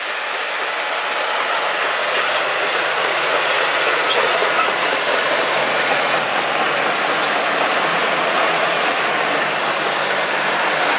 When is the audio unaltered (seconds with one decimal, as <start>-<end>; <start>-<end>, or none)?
0.0-2.0; 5.1-5.6; 6.4-7.9; 9.1-11.0